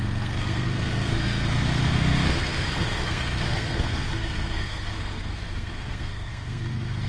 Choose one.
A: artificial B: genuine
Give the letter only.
A